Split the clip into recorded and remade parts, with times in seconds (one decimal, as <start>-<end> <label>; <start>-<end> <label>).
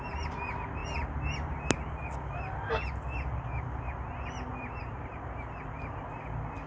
0.0-4.5 recorded; 4.5-6.2 remade; 6.2-6.7 recorded